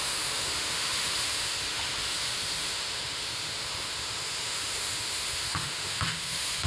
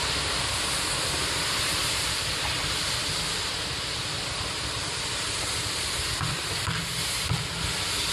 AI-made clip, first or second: first